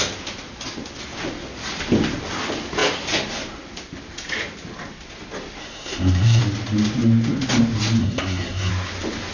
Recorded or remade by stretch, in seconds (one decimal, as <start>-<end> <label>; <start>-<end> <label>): 0.0-5.6 recorded; 5.6-6.4 remade; 6.4-8.0 recorded; 8.0-8.7 remade; 8.7-9.3 recorded